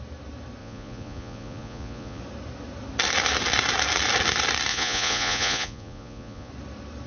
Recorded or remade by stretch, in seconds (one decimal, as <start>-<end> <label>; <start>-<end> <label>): 0.0-0.6 recorded; 0.6-2.2 remade; 2.2-4.7 recorded; 4.7-6.5 remade; 6.5-7.1 recorded